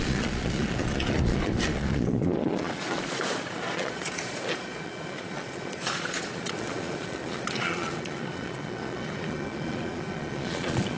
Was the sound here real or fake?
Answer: fake